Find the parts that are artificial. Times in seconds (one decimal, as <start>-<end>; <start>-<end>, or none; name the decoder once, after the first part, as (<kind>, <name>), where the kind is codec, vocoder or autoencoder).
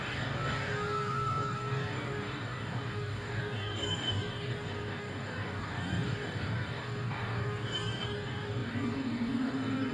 0.0-9.9 (codec, DAC)